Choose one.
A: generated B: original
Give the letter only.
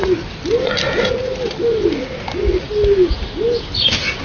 B